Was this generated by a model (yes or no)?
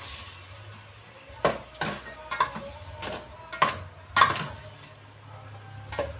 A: no